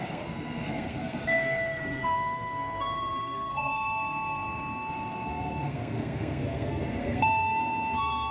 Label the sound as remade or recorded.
remade